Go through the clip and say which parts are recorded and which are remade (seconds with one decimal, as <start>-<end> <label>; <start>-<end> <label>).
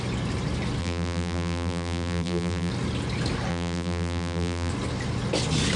0.0-0.8 recorded; 0.8-2.7 remade; 2.7-3.5 recorded; 3.5-4.7 remade; 4.7-5.8 recorded